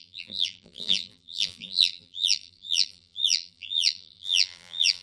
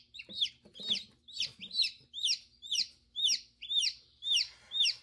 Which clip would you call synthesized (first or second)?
first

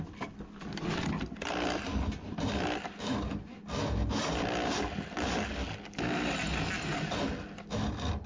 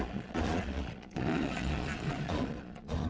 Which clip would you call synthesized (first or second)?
second